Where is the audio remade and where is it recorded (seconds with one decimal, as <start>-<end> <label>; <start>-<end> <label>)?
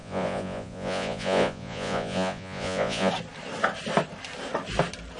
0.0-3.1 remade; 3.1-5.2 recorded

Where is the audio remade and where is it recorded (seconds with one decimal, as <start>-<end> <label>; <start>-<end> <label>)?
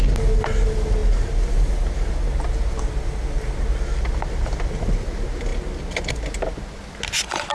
0.0-7.5 recorded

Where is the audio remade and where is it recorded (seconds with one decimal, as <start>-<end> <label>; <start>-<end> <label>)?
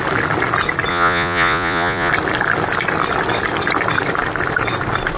0.0-0.9 recorded; 0.9-2.1 remade; 2.1-5.2 recorded